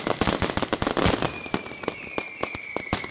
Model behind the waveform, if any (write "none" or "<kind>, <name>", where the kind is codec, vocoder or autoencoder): none